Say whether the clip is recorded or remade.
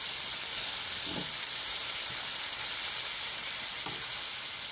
recorded